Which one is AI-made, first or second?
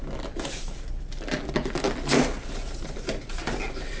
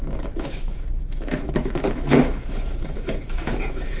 second